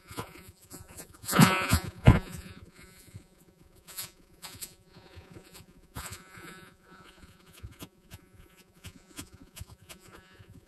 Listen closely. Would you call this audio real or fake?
fake